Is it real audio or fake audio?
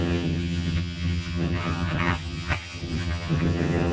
fake